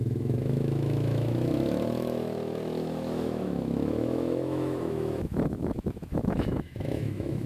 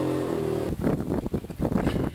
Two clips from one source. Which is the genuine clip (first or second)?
second